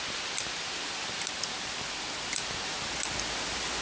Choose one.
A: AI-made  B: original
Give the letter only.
B